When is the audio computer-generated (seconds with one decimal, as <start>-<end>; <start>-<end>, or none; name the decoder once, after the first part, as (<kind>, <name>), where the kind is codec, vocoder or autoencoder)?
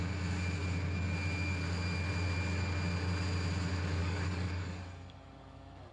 4.0-5.9 (codec, DAC)